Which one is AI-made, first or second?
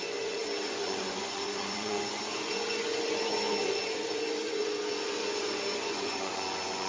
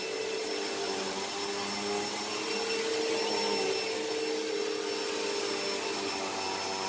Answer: first